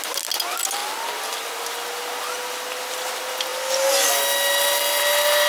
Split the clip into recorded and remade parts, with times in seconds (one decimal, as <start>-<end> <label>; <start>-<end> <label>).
0.0-5.5 recorded